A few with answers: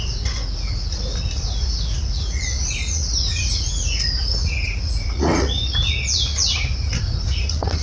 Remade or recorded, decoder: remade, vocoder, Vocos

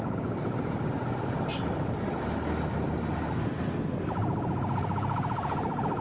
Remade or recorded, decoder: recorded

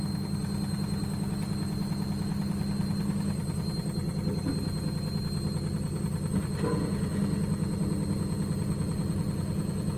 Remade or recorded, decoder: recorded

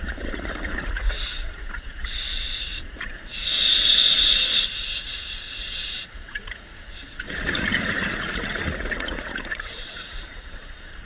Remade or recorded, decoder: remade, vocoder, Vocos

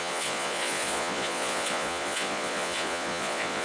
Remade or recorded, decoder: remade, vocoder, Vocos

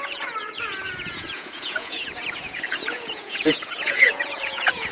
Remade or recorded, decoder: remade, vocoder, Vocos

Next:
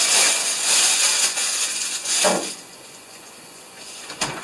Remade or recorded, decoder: remade, vocoder, Vocos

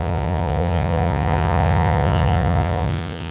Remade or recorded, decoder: remade, vocoder, Vocos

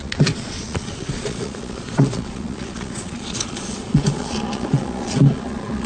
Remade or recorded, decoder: remade, vocoder, Vocos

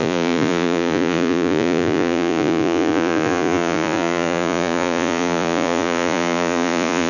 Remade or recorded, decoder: remade, vocoder, Vocos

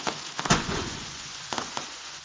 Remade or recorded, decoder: remade, vocoder, Vocos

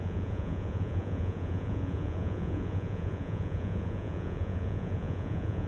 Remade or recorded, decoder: remade, vocoder, Vocos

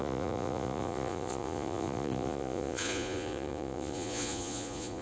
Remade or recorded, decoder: remade, vocoder, Vocos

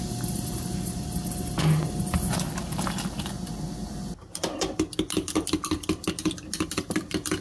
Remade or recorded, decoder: recorded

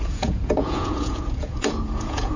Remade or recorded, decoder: remade, vocoder, Vocos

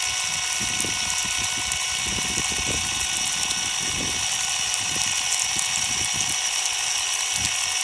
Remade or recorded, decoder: recorded